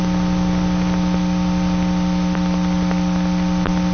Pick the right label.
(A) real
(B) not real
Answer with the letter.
A